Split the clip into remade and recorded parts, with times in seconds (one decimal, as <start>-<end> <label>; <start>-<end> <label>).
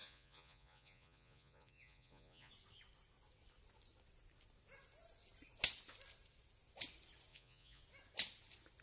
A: 0.0-2.5 remade; 2.5-7.3 recorded; 7.3-7.8 remade; 7.8-8.8 recorded